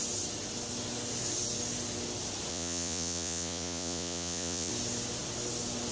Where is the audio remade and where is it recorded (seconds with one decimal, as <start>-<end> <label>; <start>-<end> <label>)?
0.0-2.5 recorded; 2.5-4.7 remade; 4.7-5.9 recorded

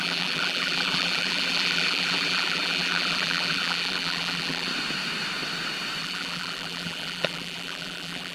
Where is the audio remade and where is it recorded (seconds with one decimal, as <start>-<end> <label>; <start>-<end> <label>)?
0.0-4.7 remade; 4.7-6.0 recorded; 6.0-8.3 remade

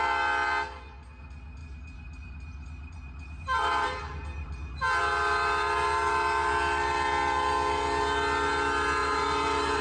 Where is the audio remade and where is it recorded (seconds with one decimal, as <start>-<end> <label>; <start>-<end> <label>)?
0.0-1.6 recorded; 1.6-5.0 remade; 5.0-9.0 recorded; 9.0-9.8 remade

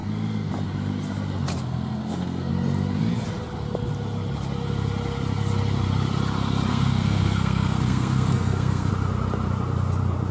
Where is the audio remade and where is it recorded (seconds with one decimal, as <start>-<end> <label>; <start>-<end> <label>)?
0.0-0.5 remade; 0.5-1.6 recorded; 1.6-2.5 remade; 2.5-6.7 recorded; 6.7-8.9 remade; 8.9-10.3 recorded

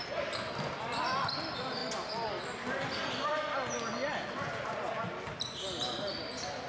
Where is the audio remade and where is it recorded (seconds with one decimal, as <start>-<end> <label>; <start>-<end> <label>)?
0.0-6.7 recorded

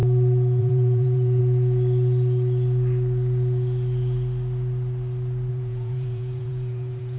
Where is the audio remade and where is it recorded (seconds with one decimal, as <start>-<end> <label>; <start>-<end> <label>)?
0.0-0.6 recorded; 0.6-1.4 remade; 1.4-5.5 recorded; 5.5-7.2 remade